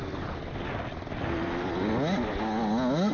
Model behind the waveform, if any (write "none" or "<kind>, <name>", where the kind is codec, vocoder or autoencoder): none